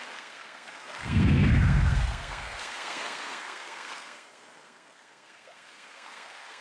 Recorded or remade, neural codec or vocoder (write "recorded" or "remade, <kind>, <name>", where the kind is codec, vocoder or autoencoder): remade, codec, SNAC